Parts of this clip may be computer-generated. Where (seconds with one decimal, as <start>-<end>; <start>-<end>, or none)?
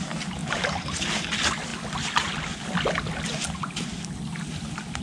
0.4-1.1